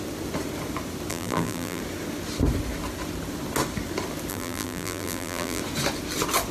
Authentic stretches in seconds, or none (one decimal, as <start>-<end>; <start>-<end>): 0.0-1.1; 1.8-4.3; 5.6-6.5